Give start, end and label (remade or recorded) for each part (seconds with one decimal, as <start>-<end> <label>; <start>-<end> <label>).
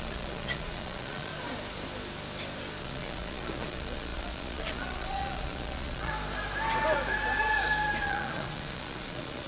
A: 0.0-1.3 remade; 1.3-2.8 recorded; 2.8-6.1 remade; 6.1-8.0 recorded; 8.0-9.5 remade